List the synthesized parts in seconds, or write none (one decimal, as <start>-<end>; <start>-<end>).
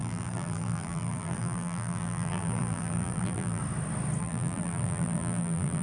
0.0-3.6; 4.2-5.8